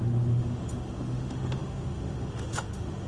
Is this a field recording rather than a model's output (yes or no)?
no